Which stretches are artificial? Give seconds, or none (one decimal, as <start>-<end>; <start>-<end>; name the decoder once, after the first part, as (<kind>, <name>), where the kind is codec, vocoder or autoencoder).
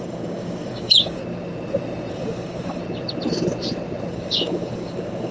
0.0-1.2 (codec, DAC); 2.1-2.8; 4.1-5.3